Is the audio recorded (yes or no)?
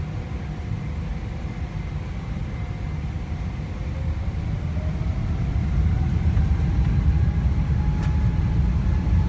yes